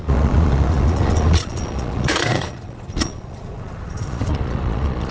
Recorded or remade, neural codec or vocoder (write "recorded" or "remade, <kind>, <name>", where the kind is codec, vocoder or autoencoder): remade, vocoder, Vocos